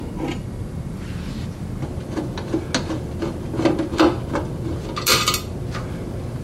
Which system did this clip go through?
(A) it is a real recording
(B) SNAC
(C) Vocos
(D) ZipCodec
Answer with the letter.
A